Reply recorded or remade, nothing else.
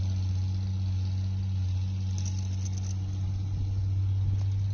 recorded